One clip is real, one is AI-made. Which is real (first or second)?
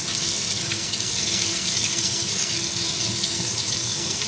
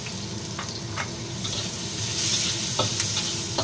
second